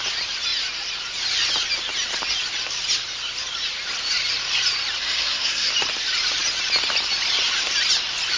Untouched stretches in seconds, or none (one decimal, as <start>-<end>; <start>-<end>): 0.0-5.0; 5.7-8.4